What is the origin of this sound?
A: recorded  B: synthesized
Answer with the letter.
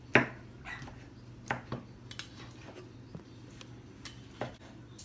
A